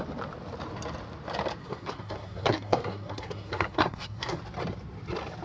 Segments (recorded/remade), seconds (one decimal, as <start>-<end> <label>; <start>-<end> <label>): 0.0-1.6 recorded; 1.6-4.4 remade; 4.4-5.4 recorded